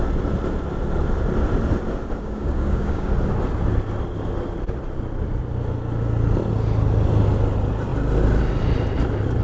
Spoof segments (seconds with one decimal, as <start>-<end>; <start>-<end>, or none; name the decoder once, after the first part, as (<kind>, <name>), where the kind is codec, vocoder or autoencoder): 2.2-3.1 (codec, DAC)